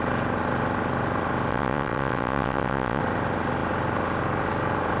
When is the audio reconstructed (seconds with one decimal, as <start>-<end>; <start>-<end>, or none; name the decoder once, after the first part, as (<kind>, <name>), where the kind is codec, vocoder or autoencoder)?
1.5-3.0 (vocoder, WaveNeXt)